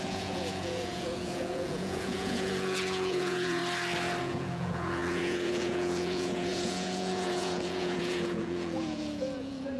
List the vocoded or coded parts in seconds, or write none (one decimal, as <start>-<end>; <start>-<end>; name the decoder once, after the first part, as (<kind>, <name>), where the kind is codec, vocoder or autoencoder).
0.0-3.6 (vocoder, Vocos); 4.2-9.8